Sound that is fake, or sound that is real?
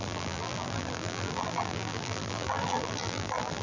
fake